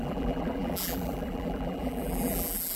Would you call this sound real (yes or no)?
no